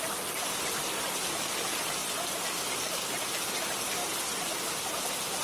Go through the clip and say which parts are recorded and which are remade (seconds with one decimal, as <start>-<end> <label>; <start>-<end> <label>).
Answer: 0.0-4.0 recorded; 4.0-4.7 remade; 4.7-5.4 recorded